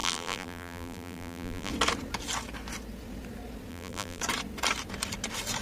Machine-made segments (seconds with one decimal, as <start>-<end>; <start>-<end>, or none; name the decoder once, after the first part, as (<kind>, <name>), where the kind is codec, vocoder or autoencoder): 0.0-1.7 (vocoder, BigVGAN v2); 3.7-4.2